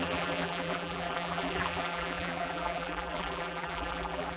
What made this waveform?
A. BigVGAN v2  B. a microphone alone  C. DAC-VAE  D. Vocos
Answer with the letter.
A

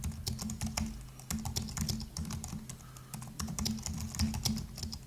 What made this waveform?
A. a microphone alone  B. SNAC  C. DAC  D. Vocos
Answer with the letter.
A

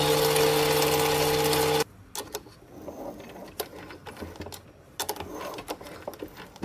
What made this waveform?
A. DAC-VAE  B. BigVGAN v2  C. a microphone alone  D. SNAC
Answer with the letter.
C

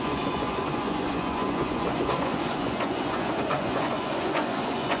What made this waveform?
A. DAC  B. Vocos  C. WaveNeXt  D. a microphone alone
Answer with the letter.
B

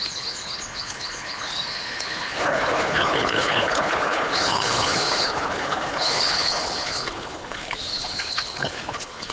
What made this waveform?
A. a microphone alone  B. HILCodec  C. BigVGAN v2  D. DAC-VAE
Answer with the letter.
B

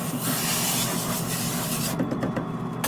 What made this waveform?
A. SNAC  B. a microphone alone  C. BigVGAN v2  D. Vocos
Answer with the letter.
B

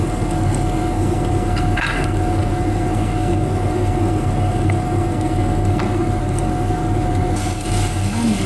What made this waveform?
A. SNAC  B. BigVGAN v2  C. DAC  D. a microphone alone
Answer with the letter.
A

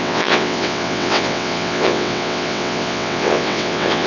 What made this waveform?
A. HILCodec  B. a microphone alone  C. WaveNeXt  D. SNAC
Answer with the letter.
C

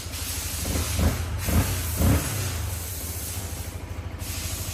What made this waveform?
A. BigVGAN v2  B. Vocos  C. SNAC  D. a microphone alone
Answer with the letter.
D